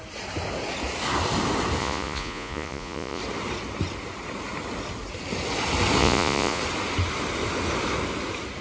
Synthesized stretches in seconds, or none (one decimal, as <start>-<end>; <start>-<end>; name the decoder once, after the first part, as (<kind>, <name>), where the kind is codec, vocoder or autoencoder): 1.8-3.2 (vocoder, Vocos); 6.0-6.6